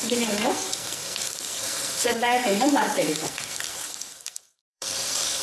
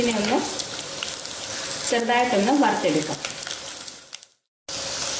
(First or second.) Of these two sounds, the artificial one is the first